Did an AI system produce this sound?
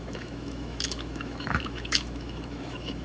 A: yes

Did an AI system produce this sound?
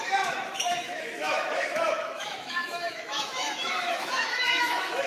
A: yes